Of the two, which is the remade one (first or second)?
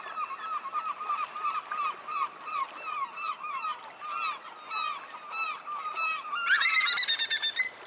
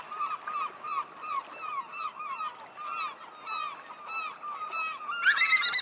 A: first